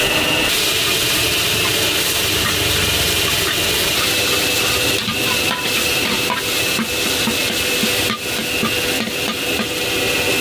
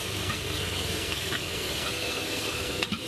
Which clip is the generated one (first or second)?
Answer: second